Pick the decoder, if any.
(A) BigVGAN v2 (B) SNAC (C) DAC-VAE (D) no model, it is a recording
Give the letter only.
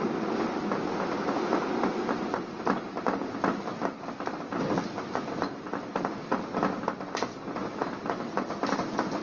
D